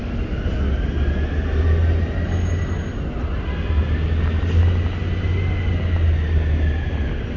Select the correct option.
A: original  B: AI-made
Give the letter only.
A